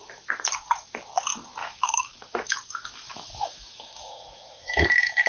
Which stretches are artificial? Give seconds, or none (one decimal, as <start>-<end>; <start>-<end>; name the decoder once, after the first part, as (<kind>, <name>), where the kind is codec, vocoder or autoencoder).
1.6-4.8 (autoencoder, DAC-VAE)